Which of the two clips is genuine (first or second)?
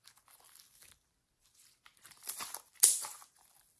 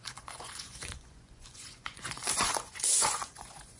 first